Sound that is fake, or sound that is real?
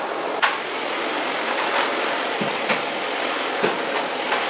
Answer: fake